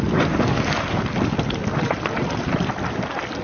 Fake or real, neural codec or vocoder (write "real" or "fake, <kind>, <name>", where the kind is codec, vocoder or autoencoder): real